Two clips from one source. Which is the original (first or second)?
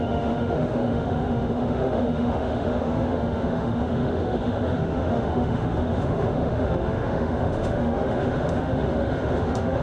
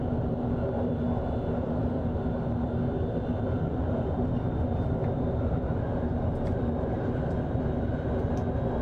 second